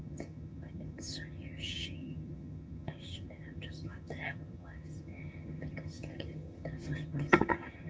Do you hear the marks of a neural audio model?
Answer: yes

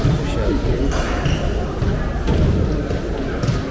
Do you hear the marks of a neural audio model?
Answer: no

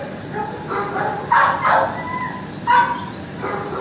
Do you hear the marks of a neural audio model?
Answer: no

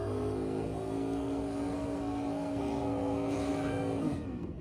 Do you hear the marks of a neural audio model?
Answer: yes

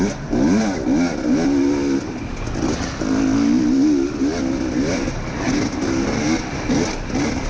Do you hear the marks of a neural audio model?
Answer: no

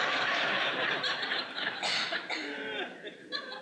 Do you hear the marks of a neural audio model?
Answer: yes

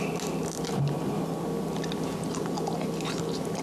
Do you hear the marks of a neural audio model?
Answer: no